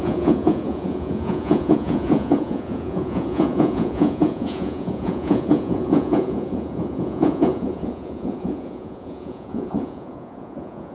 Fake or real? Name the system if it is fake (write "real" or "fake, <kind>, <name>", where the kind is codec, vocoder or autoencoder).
fake, vocoder, Vocos